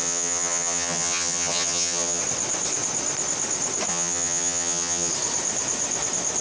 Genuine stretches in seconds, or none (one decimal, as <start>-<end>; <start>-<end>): 2.2-3.9; 5.1-6.4